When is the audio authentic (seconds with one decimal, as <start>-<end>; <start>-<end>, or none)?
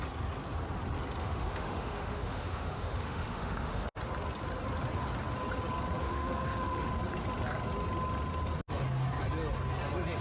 0.0-1.2; 4.0-6.0; 6.9-10.2